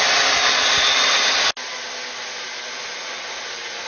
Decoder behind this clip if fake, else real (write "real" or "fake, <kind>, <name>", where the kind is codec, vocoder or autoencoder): real